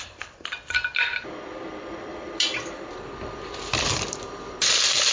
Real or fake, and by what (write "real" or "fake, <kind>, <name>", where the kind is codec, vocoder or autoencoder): fake, vocoder, BigVGAN v2